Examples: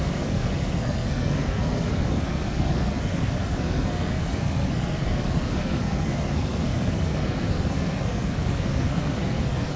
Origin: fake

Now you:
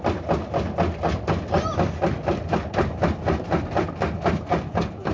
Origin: real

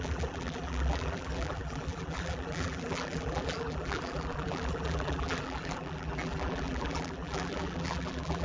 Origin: fake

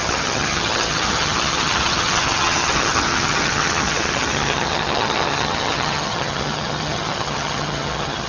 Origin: fake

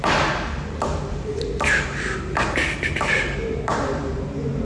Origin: fake